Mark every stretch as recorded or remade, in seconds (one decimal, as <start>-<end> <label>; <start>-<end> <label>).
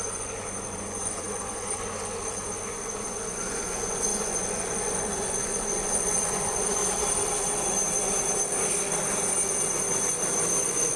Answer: 0.0-6.8 remade; 6.8-10.6 recorded; 10.6-11.0 remade